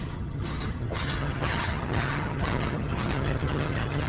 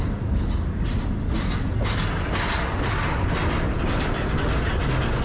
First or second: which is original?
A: second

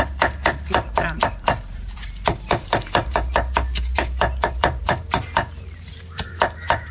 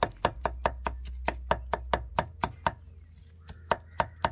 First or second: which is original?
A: second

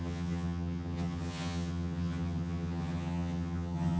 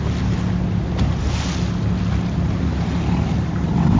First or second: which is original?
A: second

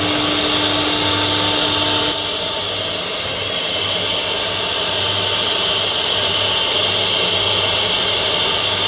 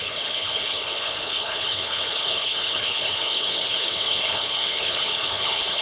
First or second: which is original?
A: first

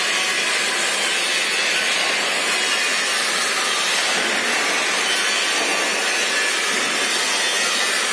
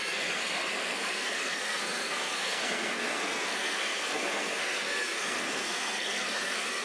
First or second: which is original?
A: first